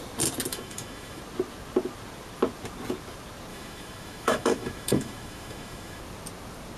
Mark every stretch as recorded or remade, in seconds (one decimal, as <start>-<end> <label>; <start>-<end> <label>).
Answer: 0.0-0.5 recorded; 0.5-1.2 remade; 1.2-3.5 recorded; 3.5-6.0 remade; 6.0-6.8 recorded